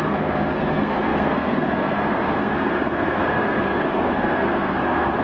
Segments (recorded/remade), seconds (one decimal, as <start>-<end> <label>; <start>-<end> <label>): 0.0-5.2 remade

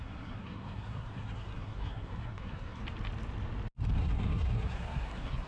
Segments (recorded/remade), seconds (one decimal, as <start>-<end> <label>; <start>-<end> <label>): 0.0-2.8 remade; 2.8-4.0 recorded; 4.0-5.5 remade

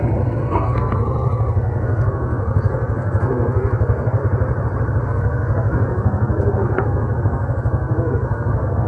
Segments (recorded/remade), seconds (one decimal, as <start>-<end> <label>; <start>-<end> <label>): 0.0-4.2 remade; 4.2-5.0 recorded; 5.0-8.9 remade

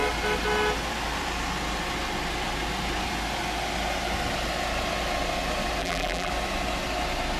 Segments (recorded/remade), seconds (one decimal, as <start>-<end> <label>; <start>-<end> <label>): 0.0-5.8 recorded; 5.8-6.3 remade; 6.3-7.4 recorded